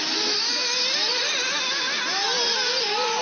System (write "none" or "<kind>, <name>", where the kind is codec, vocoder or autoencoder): none